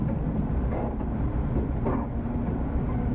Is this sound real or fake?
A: real